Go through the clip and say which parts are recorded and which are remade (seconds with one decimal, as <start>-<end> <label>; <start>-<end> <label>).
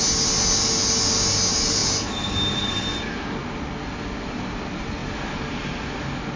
0.0-6.4 recorded